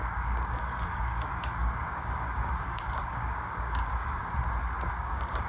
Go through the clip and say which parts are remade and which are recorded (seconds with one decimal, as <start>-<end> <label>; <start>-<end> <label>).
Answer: 0.0-4.2 remade; 4.2-4.9 recorded; 4.9-5.5 remade